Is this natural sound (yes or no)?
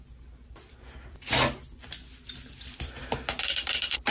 yes